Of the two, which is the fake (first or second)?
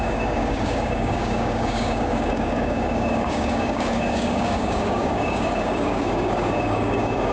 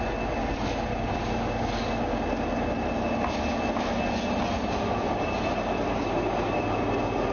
first